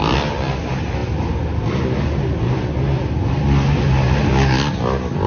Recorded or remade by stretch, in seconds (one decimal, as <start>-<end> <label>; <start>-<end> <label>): 0.0-5.3 recorded